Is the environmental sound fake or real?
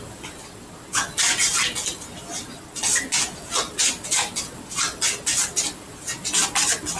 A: real